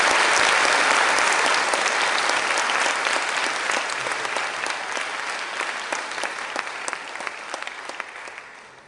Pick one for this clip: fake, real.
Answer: real